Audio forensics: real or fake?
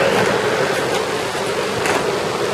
real